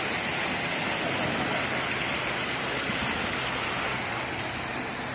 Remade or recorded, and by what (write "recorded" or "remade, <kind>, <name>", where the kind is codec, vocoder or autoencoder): recorded